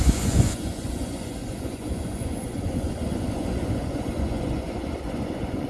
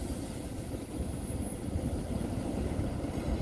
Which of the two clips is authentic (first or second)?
second